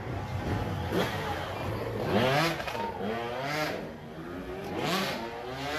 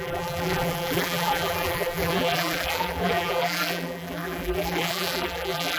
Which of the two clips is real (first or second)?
first